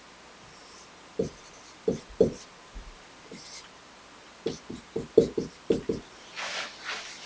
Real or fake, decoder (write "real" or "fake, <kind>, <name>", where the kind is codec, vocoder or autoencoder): real